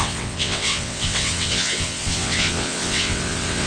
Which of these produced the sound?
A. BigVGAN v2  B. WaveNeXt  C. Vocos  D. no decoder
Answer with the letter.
B